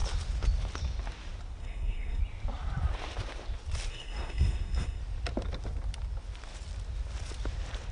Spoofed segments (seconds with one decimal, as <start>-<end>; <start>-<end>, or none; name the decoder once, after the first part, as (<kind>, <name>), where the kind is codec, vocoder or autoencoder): 1.6-2.2 (codec, SNAC); 3.9-5.0